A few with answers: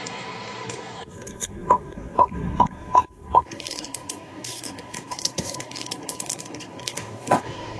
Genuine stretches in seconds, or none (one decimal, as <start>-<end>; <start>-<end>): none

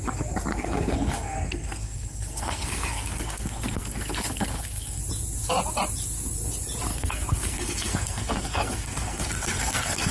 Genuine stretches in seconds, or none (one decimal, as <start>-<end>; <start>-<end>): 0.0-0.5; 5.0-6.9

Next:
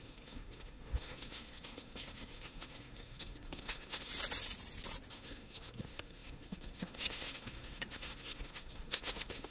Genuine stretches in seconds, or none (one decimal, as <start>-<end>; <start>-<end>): 4.1-5.1

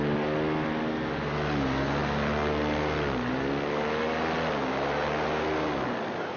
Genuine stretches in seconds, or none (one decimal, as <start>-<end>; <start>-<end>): 0.0-6.4